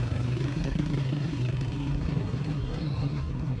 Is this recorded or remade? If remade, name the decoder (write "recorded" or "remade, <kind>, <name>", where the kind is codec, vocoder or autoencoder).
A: remade, codec, SNAC